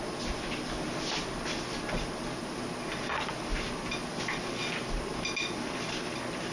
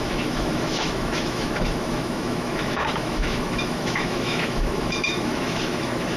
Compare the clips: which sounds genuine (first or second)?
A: first